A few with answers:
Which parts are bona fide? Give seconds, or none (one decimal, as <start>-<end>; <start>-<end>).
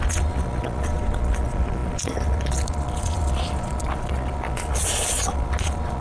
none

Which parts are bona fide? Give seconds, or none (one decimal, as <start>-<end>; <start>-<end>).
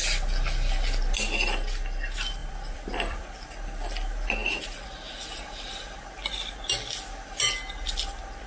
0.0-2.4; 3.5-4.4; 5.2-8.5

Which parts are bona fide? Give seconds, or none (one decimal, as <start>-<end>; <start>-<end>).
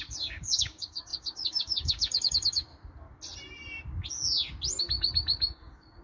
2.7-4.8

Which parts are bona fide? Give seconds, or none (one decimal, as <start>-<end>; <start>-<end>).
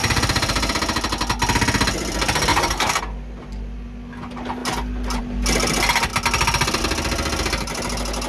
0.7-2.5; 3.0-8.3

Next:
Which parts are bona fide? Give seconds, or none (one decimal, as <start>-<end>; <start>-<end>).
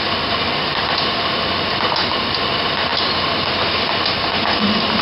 0.0-5.0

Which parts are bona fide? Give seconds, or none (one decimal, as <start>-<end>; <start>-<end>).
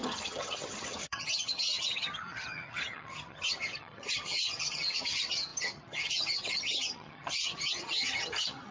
none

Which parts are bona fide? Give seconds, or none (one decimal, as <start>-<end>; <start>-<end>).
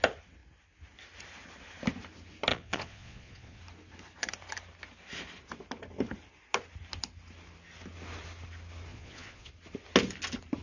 0.0-2.5; 3.6-8.9; 9.5-10.6